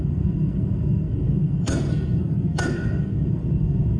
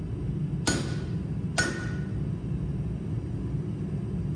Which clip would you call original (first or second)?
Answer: second